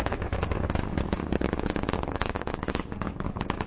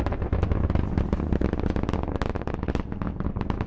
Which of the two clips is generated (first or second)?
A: first